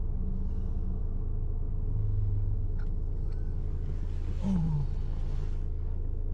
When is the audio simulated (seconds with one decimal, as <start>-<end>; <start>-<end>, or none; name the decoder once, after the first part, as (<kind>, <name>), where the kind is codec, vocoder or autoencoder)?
none